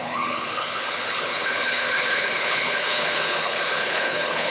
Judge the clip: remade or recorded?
remade